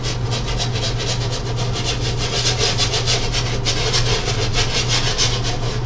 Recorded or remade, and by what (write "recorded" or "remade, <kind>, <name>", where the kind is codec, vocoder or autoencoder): recorded